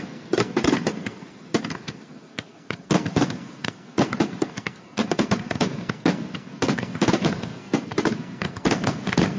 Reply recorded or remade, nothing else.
remade